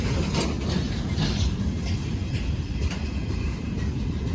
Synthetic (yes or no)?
yes